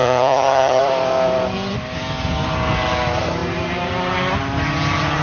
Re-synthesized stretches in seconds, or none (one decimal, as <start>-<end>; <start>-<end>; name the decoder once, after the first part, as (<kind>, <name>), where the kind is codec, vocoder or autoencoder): 0.0-0.8 (vocoder, HiFi-GAN)